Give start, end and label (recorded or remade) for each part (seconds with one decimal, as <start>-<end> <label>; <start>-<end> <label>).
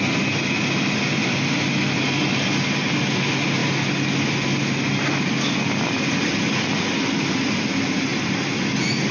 0.0-9.1 recorded